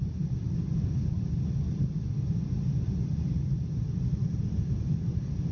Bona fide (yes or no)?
yes